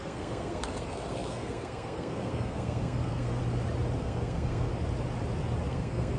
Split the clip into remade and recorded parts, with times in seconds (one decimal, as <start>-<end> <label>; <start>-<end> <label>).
0.0-3.4 remade; 3.4-4.0 recorded; 4.0-4.7 remade; 4.7-5.7 recorded; 5.7-6.2 remade